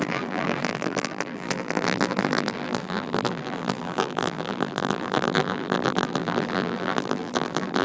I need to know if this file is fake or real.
fake